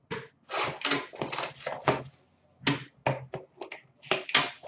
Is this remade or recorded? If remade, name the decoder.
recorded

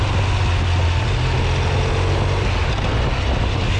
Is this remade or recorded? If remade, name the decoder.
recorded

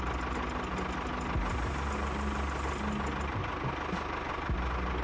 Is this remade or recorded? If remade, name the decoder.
recorded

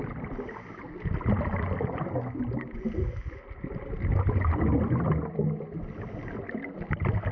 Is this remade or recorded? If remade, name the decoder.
recorded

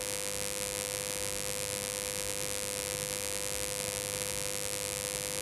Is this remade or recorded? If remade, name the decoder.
recorded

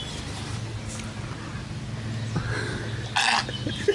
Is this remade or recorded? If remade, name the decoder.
recorded